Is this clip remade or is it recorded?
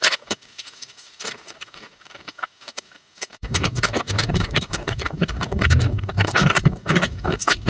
remade